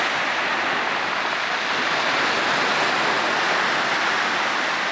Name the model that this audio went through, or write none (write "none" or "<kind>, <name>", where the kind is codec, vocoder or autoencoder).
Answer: none